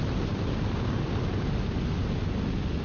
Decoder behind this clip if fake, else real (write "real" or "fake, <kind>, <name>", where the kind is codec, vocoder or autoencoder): real